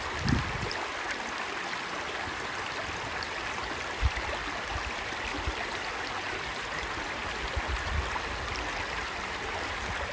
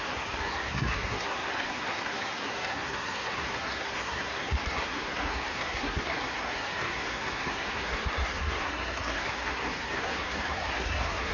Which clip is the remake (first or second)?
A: second